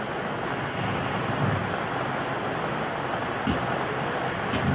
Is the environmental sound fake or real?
real